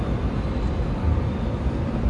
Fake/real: real